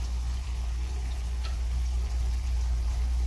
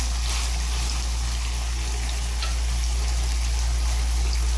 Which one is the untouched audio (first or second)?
second